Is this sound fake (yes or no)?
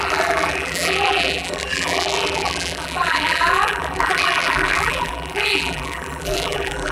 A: yes